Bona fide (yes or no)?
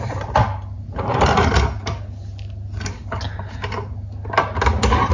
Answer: yes